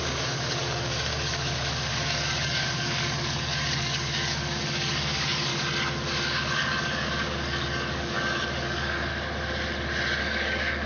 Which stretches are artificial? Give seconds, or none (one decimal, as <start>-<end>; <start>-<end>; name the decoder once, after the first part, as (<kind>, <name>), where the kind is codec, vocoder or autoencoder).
0.0-5.5 (codec, DAC); 6.1-9.1; 10.2-10.9

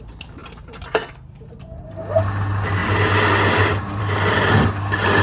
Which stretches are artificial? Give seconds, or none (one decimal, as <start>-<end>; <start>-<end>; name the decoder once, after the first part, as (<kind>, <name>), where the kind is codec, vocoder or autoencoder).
none